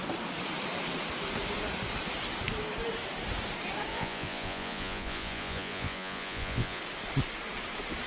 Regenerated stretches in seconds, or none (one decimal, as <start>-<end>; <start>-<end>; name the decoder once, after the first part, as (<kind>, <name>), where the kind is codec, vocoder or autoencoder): 3.9-6.8 (vocoder, Vocos)